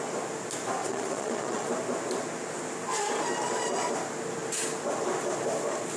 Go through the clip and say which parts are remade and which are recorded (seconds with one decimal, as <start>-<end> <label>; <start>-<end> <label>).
0.0-0.8 recorded; 0.8-1.7 remade; 1.7-6.0 recorded